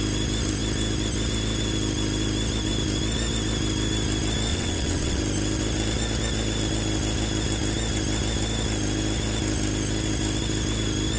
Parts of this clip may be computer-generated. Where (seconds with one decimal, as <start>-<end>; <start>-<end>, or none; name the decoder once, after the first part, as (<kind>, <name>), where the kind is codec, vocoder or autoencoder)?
4.5-5.2 (vocoder, WaveNeXt)